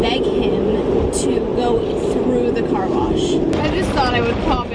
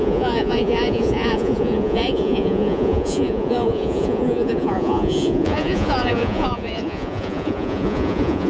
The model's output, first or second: second